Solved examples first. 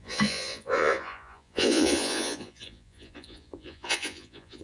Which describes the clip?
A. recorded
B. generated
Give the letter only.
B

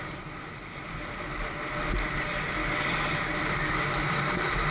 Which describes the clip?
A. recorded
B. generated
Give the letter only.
A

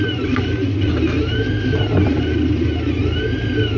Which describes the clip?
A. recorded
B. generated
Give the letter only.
A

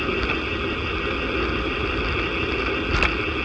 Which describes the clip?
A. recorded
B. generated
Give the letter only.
A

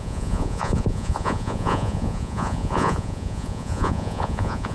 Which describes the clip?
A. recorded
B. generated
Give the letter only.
B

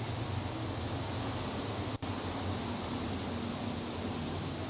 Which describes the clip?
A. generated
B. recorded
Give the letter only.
B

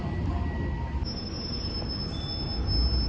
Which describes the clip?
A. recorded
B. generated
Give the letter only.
A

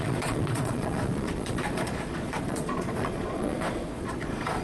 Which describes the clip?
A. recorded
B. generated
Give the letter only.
B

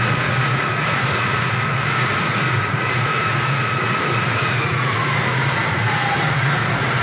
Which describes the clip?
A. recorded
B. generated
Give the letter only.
B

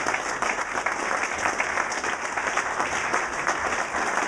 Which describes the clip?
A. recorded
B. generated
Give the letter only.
A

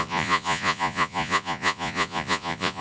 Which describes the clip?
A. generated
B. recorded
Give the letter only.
A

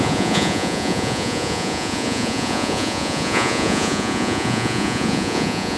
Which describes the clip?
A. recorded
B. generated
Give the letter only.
B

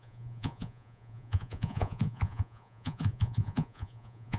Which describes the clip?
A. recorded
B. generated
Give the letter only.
B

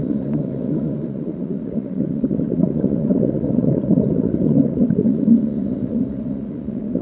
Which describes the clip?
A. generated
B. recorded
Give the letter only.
A